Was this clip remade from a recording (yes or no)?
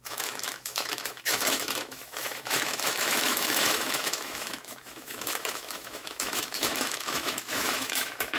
yes